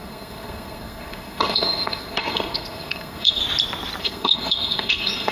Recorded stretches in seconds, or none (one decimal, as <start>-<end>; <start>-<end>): 3.4-4.0